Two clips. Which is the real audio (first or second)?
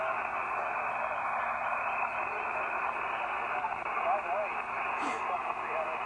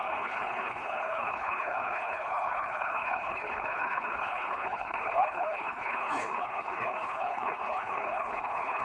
first